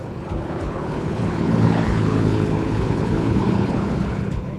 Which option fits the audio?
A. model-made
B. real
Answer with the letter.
A